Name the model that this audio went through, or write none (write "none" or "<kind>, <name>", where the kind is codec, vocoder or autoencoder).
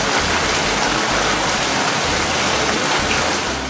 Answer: none